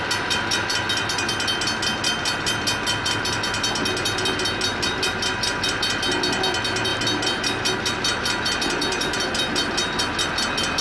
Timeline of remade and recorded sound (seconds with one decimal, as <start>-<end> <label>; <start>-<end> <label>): 0.0-10.8 recorded